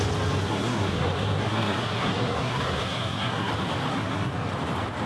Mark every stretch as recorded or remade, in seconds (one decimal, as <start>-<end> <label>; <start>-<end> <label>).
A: 0.0-0.4 recorded; 0.4-3.5 remade; 3.5-3.9 recorded; 3.9-4.5 remade; 4.5-5.1 recorded